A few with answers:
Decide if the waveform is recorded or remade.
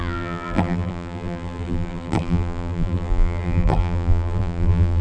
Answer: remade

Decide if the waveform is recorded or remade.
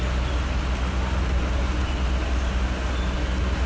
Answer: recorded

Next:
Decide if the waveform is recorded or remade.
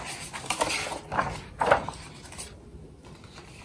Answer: recorded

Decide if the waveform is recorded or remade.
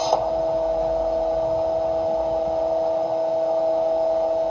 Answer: recorded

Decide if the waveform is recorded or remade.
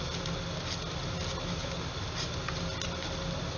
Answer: recorded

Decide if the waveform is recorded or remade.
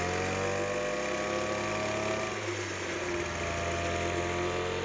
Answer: recorded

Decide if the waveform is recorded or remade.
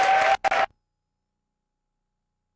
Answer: recorded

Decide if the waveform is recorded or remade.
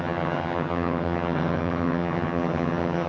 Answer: remade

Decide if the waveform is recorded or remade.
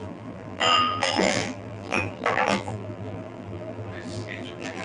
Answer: remade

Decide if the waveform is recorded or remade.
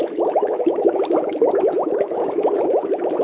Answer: remade